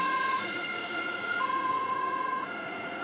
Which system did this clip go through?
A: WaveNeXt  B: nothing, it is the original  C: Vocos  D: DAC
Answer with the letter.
C